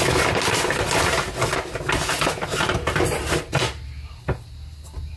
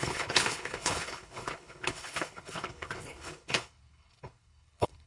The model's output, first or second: second